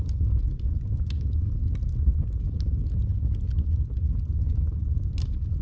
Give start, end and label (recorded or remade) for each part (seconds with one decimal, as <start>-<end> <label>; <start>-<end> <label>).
0.0-5.6 recorded